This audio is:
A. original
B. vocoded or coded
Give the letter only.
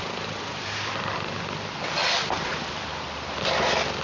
A